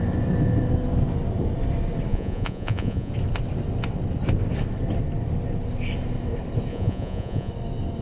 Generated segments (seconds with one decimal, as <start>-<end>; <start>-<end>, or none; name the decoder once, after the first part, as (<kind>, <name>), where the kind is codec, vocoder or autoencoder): 2.1-3.1 (vocoder, Vocos); 6.7-7.5